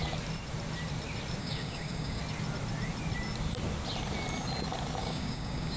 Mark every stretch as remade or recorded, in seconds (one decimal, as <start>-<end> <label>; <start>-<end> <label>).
0.0-1.4 recorded; 1.4-2.2 remade; 2.2-5.0 recorded; 5.0-5.8 remade